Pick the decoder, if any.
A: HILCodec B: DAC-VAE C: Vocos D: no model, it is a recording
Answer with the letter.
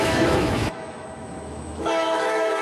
B